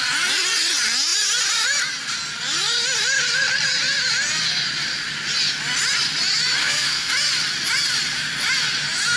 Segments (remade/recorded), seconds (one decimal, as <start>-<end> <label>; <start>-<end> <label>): 0.0-6.6 recorded; 6.6-7.1 remade; 7.1-9.2 recorded